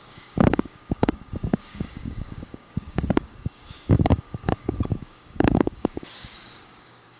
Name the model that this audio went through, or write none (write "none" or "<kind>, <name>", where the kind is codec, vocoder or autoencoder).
codec, DAC